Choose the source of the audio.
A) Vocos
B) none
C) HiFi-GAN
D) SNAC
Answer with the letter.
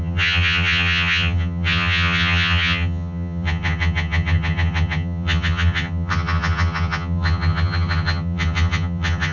C